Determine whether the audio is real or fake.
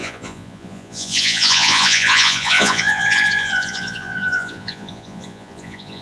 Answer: fake